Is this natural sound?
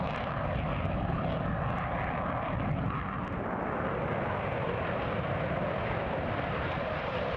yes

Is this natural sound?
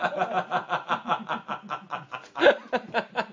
yes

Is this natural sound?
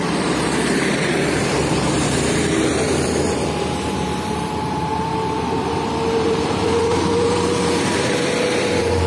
no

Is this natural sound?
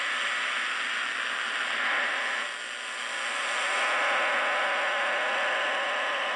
yes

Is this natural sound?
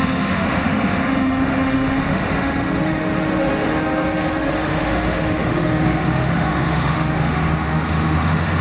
no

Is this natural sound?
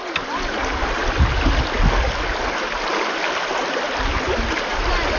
yes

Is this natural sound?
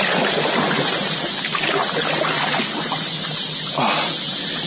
yes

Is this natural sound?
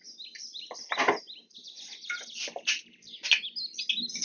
yes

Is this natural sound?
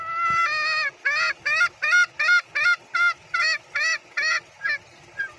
yes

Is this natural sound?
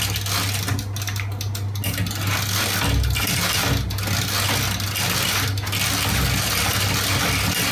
yes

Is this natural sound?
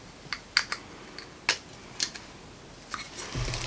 yes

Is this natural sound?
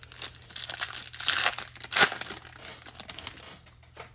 yes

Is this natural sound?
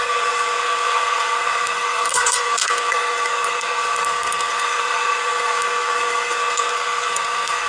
no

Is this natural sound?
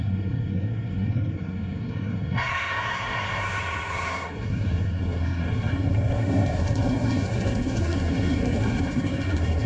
no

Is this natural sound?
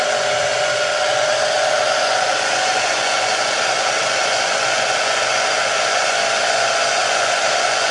no